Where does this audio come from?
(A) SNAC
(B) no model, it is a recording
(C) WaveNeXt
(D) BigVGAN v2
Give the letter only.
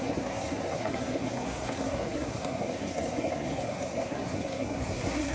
A